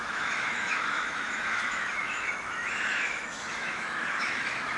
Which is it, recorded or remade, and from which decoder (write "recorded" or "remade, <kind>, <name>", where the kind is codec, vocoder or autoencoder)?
remade, autoencoder, DAC-VAE